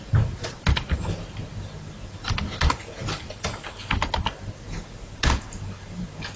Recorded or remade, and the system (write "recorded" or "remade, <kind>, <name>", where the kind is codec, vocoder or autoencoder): recorded